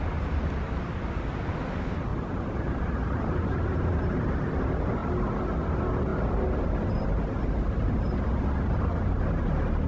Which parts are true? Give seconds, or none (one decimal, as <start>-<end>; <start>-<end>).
0.0-2.1; 4.6-9.9